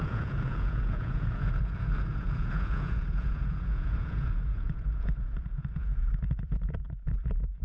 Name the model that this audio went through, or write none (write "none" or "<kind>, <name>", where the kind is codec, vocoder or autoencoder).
vocoder, Vocos